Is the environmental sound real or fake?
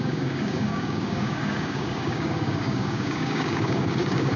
fake